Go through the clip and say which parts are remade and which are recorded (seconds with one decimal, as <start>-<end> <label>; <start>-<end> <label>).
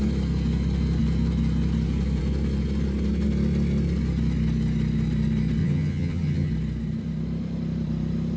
0.0-5.6 recorded; 5.6-6.5 remade; 6.5-8.4 recorded